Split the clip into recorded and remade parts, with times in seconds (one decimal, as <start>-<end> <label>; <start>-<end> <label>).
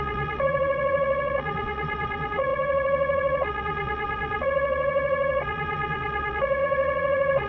0.0-7.5 remade